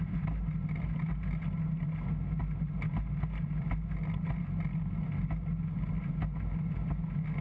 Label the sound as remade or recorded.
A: recorded